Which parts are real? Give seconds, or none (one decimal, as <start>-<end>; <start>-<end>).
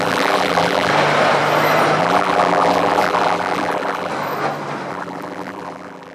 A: 0.9-2.0; 4.1-4.9